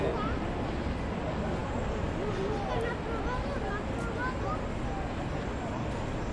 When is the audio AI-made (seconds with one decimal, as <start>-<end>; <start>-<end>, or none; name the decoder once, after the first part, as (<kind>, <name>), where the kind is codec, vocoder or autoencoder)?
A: none